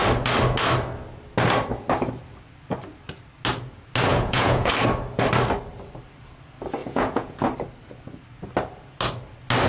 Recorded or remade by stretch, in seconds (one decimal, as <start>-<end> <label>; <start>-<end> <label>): 0.0-4.1 recorded; 4.1-4.7 remade; 4.7-6.8 recorded; 6.8-7.4 remade; 7.4-9.7 recorded